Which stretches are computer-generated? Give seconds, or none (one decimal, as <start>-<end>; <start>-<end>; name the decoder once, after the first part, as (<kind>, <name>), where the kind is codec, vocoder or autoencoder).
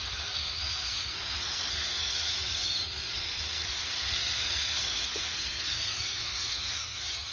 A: 0.0-7.3 (codec, SNAC)